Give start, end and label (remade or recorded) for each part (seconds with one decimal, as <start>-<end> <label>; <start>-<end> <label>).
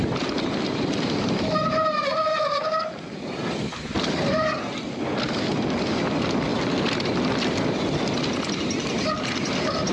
0.0-9.9 recorded